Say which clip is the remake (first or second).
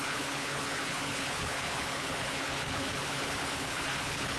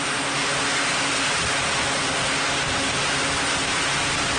first